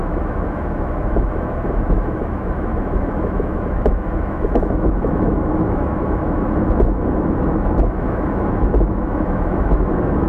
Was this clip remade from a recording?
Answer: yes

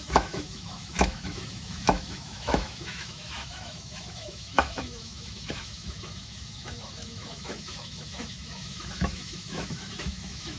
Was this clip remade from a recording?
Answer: yes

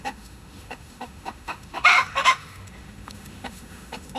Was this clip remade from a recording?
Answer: yes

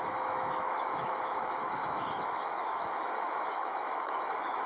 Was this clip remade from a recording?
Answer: yes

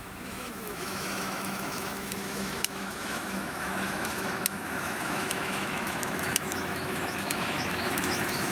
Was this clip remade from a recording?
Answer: yes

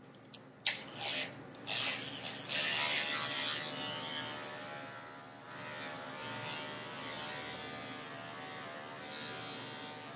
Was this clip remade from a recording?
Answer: no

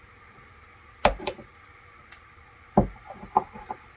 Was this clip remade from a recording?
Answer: no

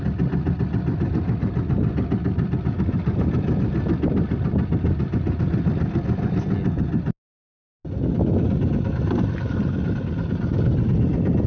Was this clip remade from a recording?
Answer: no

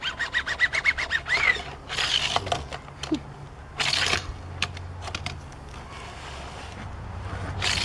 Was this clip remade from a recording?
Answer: no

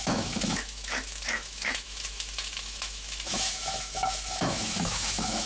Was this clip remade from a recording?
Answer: yes